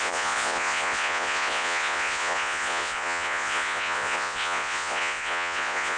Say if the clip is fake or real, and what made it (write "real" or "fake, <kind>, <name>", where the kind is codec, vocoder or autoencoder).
fake, vocoder, Vocos